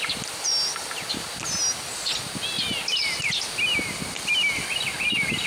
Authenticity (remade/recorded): recorded